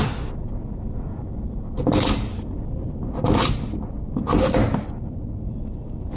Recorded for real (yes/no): yes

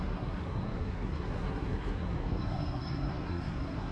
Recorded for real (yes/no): no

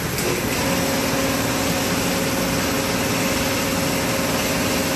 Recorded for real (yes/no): yes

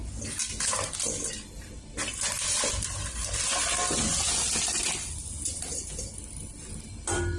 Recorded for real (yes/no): yes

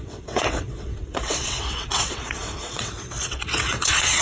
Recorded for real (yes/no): no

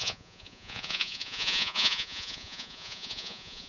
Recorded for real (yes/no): no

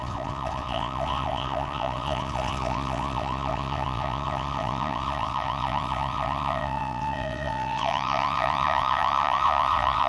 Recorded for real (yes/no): no